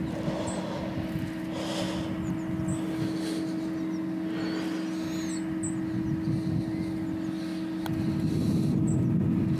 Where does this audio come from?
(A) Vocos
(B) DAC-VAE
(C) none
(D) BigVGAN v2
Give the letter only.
C